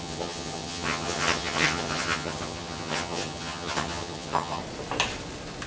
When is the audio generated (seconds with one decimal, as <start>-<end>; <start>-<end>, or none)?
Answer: 0.0-4.6